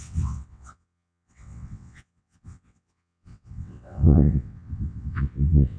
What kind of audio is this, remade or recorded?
remade